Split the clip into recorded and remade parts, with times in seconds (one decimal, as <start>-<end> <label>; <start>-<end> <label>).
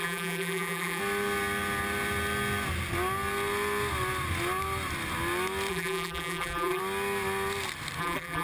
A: 0.0-1.0 remade; 1.0-5.7 recorded; 5.7-6.8 remade; 6.8-8.0 recorded; 8.0-8.4 remade